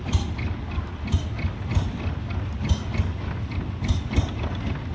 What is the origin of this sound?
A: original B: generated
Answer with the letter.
A